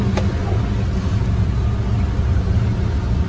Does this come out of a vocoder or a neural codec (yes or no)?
no